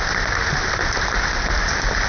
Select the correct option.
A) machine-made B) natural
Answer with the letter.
B